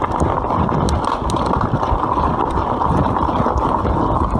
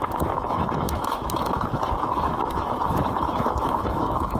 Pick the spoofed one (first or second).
second